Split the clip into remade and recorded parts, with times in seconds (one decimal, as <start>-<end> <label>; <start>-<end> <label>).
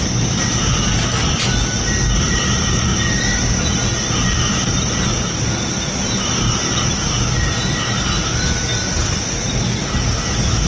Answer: 0.0-8.7 recorded; 8.7-9.3 remade; 9.3-10.7 recorded